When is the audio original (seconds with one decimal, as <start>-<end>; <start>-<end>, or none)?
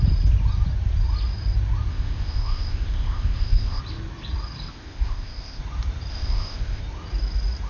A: 0.0-1.9; 3.8-4.7; 5.6-6.1; 6.8-7.7